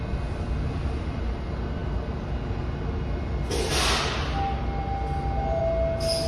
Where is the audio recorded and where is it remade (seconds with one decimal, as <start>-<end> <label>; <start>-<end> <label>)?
0.0-6.3 recorded